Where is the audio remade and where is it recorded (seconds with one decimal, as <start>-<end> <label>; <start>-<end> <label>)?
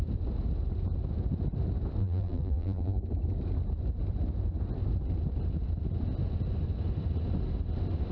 0.0-2.0 recorded; 2.0-3.0 remade; 3.0-8.1 recorded